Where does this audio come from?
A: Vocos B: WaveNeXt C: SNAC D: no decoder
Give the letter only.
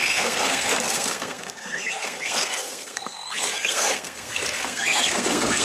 C